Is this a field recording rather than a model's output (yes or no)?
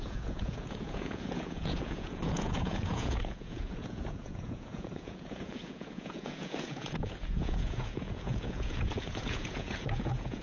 no